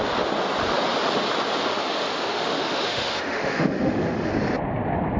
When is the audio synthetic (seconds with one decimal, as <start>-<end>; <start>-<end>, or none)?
1.7-4.3